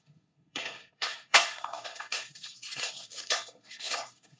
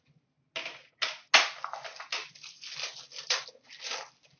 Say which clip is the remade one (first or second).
first